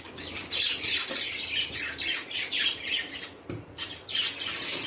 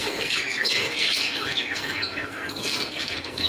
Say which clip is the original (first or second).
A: first